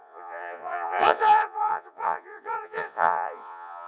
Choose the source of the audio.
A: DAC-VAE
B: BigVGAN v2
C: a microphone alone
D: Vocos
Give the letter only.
D